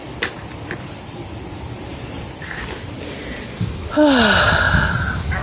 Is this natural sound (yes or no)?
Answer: yes